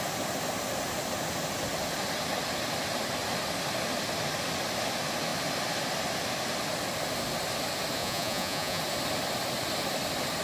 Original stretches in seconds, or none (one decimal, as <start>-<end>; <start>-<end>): 0.0-8.0; 8.8-10.4